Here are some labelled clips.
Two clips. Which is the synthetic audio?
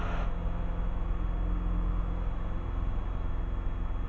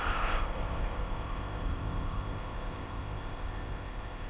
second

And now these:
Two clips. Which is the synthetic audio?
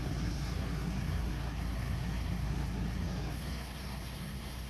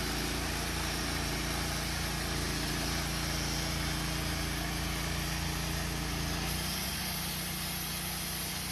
first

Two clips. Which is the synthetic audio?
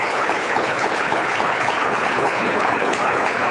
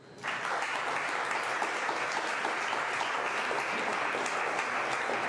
first